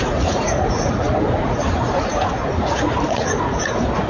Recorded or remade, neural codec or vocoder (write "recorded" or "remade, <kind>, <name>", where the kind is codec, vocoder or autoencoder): remade, vocoder, Vocos